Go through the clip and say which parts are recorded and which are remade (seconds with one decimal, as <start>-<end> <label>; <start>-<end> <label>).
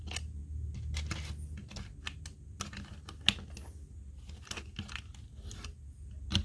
0.0-6.4 recorded